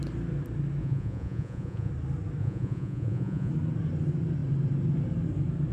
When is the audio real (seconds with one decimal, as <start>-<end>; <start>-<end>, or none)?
0.0-0.8; 1.9-2.4; 3.5-5.7

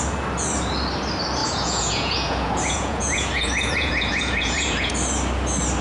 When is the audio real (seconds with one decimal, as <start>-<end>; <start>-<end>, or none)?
0.0-1.4; 4.9-5.8

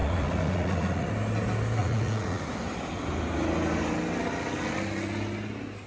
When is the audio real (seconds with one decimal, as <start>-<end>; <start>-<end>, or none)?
1.1-1.8; 2.4-5.9

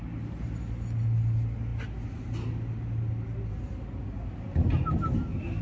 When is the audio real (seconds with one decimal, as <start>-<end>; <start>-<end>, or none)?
0.0-5.6

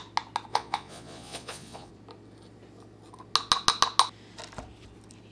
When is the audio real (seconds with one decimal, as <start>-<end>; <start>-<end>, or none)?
0.0-0.5; 1.9-5.3

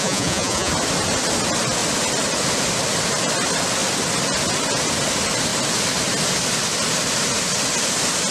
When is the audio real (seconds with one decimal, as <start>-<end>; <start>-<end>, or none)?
0.7-8.3

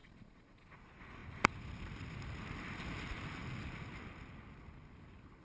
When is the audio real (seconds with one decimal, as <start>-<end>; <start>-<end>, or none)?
0.7-5.4

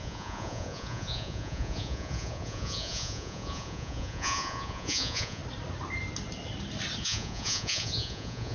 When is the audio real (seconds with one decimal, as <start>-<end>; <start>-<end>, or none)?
5.4-7.0